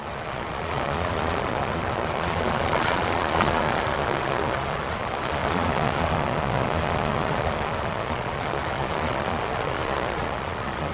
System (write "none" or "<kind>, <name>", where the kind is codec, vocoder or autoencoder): vocoder, Vocos